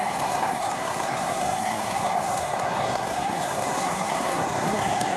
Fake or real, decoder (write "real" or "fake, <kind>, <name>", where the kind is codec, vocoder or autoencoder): fake, codec, SNAC